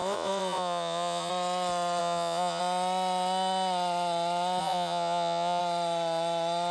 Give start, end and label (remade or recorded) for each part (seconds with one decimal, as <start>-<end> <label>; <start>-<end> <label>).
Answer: 0.0-1.3 remade; 1.3-2.0 recorded; 2.0-2.6 remade; 2.6-4.6 recorded; 4.6-5.6 remade; 5.6-6.7 recorded